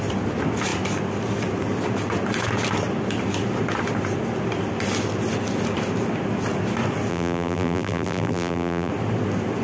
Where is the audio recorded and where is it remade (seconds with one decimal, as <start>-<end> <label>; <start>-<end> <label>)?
0.0-7.1 recorded; 7.1-8.9 remade; 8.9-9.6 recorded